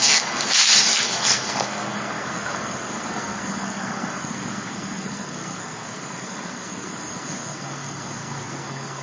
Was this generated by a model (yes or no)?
yes